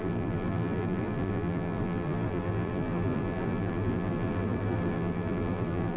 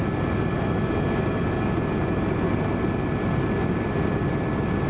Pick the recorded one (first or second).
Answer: second